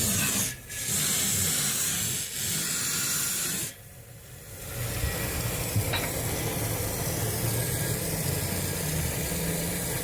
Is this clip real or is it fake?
real